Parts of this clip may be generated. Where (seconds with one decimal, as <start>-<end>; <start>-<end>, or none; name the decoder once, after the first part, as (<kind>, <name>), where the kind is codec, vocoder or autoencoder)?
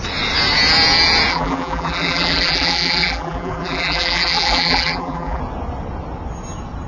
1.3-5.4 (vocoder, BigVGAN v2)